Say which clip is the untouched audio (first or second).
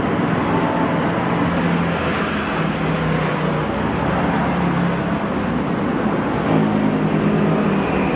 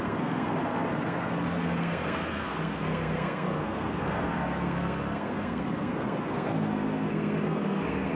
first